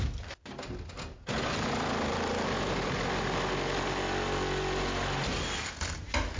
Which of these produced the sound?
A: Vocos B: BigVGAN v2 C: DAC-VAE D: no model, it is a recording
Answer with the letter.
D